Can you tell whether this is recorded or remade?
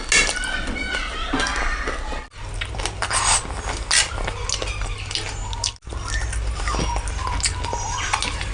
recorded